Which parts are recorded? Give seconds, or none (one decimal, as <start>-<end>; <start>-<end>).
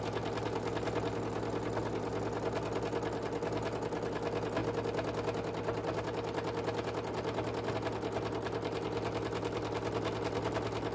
0.0-10.9